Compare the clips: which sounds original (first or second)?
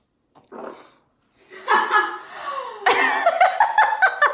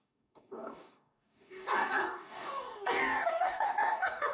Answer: first